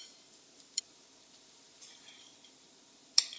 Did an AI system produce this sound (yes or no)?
yes